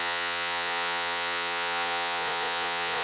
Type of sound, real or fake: fake